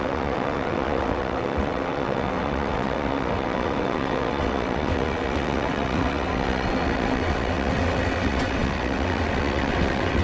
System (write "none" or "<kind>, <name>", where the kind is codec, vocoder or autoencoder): vocoder, WaveNeXt